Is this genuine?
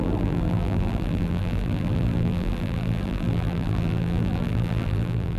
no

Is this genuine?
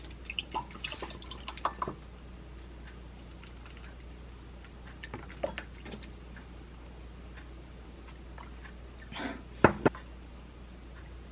yes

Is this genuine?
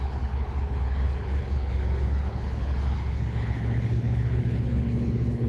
no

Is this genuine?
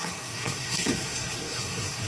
no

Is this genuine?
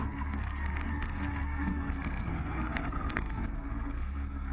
no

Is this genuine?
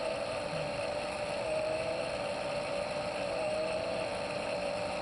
yes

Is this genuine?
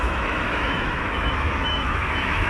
no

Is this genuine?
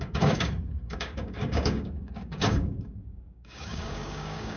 no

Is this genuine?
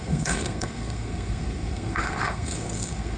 no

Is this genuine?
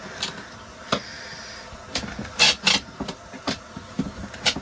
no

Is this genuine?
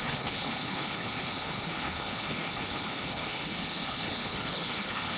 no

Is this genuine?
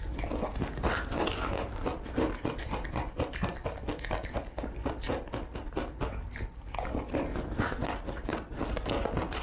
yes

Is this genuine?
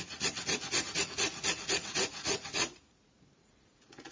no